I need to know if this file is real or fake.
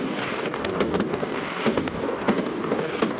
fake